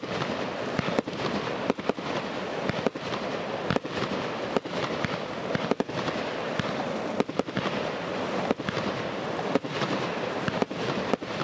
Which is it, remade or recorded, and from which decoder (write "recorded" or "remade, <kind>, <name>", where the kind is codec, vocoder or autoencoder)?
remade, vocoder, BigVGAN v2